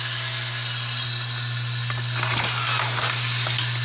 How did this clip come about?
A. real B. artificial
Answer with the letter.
A